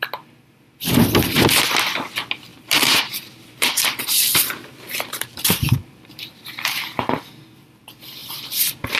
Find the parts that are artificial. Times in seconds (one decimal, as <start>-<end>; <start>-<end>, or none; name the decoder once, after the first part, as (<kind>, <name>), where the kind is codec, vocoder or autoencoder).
2.5-7.2 (vocoder, BigVGAN v2); 8.2-9.0